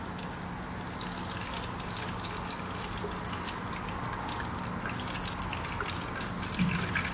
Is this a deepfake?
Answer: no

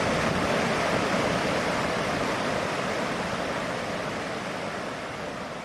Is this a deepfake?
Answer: no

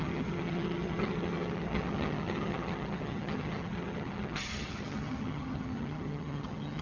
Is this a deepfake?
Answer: yes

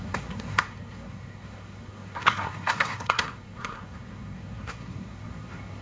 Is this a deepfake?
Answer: yes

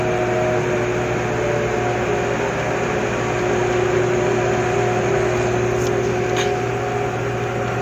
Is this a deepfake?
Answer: no